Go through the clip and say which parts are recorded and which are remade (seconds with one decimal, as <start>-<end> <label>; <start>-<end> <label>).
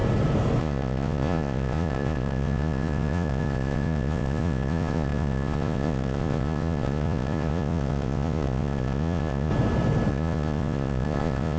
0.0-0.6 recorded; 0.6-9.5 remade; 9.5-10.1 recorded; 10.1-11.6 remade